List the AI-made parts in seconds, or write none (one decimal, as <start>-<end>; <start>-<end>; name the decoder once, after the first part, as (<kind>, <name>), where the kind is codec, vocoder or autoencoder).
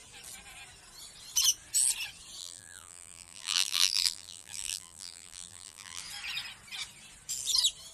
2.4-6.0 (vocoder, BigVGAN v2)